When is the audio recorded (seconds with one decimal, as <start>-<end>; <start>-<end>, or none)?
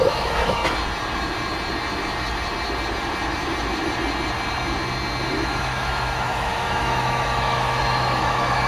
0.6-5.3